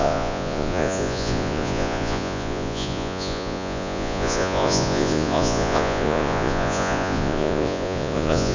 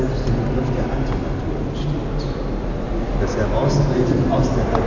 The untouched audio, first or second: second